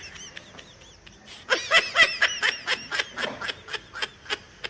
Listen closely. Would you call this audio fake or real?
real